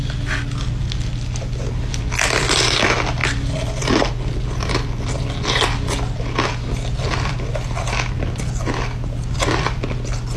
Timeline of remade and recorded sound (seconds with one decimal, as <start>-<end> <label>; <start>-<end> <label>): 0.0-10.4 recorded